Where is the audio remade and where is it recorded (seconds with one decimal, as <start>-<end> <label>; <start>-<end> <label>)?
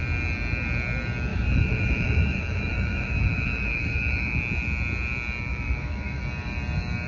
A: 0.0-1.3 recorded; 1.3-4.4 remade; 4.4-5.5 recorded; 5.5-6.2 remade; 6.2-7.1 recorded